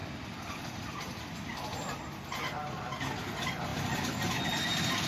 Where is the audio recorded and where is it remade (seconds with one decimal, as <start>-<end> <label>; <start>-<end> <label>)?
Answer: 0.0-5.1 recorded